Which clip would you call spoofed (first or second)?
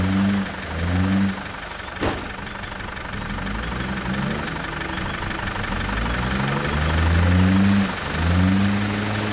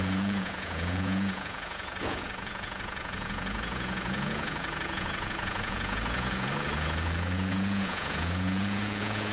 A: second